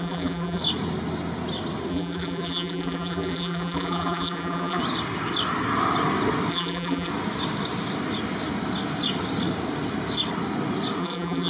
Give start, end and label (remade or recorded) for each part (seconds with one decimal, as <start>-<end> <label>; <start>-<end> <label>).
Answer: 0.0-0.6 remade; 0.6-1.9 recorded; 1.9-4.8 remade; 4.8-6.5 recorded; 6.5-7.1 remade; 7.1-11.0 recorded; 11.0-11.5 remade